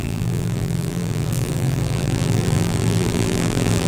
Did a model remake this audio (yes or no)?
yes